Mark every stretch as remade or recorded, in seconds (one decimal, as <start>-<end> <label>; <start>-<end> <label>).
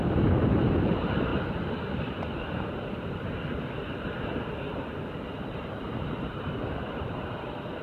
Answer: 0.0-7.8 recorded